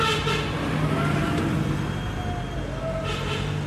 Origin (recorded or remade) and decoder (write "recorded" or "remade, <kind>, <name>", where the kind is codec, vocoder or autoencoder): recorded